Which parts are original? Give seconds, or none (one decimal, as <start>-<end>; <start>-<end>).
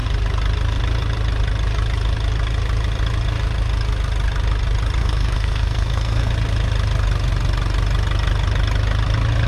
0.0-5.0; 6.3-9.5